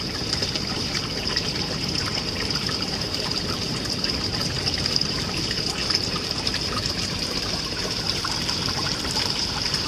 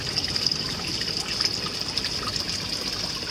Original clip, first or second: second